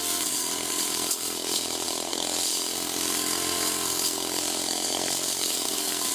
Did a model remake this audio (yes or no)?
yes